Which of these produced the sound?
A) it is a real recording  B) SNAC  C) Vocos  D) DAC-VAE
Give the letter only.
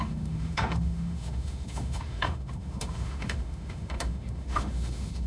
D